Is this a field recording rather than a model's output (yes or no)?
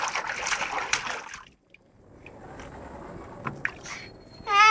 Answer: yes